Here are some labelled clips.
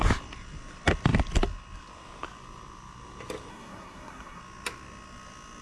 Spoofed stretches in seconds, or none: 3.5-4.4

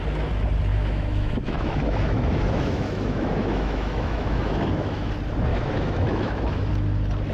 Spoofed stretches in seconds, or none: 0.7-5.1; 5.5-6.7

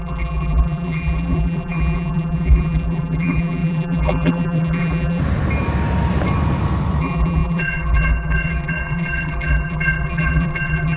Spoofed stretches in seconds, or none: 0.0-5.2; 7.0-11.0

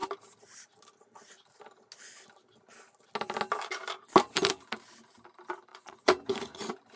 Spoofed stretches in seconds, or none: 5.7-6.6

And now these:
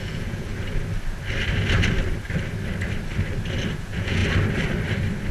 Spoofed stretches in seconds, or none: 0.0-0.5; 3.7-4.2